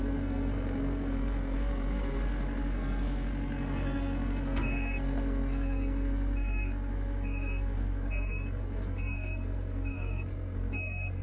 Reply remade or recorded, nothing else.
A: remade